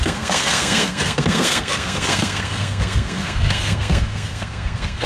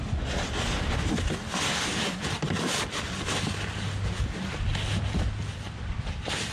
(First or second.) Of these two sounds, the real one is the second